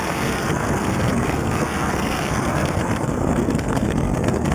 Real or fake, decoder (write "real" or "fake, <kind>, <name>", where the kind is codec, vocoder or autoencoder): fake, codec, SNAC